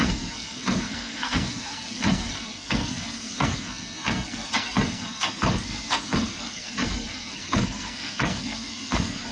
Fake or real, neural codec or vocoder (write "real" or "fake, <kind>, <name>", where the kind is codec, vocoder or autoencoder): fake, codec, SNAC